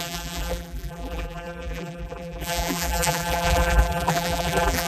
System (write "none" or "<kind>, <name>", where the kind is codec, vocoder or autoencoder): vocoder, BigVGAN v2